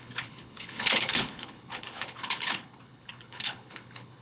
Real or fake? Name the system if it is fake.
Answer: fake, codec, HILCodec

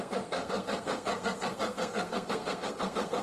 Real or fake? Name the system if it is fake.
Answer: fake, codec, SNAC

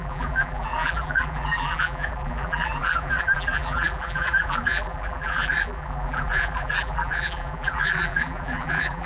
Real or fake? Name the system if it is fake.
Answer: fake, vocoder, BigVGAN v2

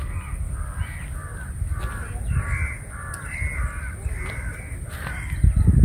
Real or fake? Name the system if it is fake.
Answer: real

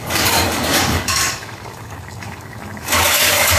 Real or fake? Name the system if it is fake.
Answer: fake, codec, DAC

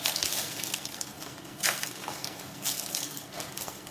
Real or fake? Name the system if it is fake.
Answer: fake, codec, SNAC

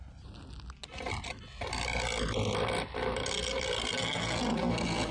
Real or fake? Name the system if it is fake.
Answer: real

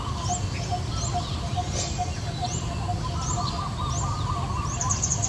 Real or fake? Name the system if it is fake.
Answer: real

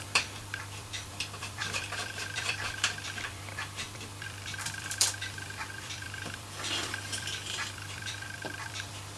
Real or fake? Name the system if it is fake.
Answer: fake, vocoder, BigVGAN v2